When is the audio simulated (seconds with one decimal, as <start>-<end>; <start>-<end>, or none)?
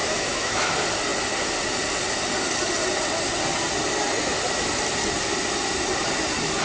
0.0-0.7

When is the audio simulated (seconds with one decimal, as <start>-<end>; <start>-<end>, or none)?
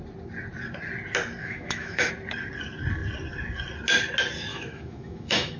1.4-2.1; 4.5-5.6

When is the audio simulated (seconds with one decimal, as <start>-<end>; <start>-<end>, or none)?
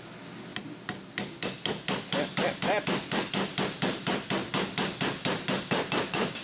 none